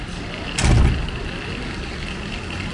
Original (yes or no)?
yes